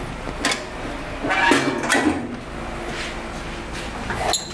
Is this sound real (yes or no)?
yes